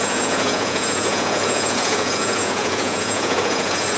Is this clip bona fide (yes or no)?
no